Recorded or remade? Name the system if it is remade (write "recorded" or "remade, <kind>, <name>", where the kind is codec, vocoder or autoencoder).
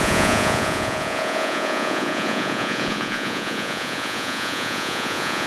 remade, vocoder, Vocos